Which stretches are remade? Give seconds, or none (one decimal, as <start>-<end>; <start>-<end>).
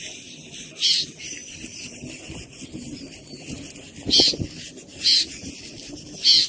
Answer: 1.4-4.1